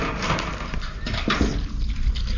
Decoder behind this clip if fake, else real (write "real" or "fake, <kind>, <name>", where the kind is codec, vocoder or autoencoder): real